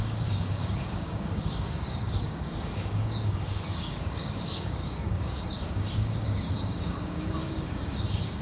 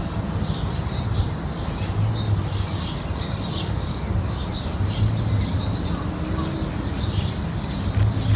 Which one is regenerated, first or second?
first